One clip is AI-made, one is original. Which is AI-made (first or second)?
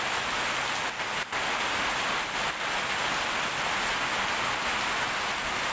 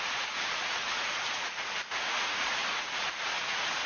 second